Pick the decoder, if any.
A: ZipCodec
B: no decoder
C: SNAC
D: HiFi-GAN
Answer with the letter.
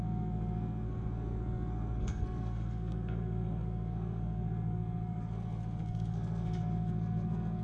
C